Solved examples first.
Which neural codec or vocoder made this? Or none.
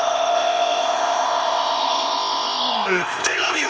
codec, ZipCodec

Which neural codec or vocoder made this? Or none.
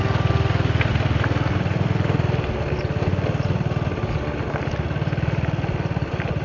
none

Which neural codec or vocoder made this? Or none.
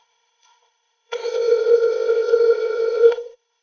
codec, ZipCodec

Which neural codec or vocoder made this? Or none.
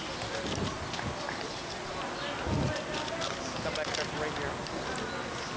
none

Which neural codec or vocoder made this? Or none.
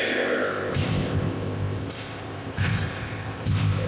codec, ZipCodec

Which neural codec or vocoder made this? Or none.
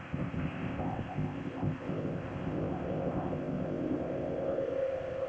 codec, ZipCodec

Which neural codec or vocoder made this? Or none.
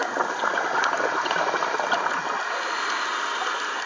none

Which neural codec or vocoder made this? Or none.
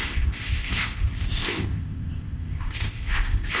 codec, ZipCodec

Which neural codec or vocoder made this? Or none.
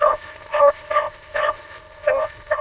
codec, ZipCodec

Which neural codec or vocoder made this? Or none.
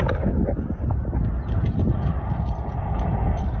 none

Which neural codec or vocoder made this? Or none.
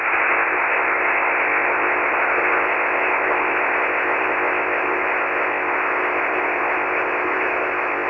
codec, ZipCodec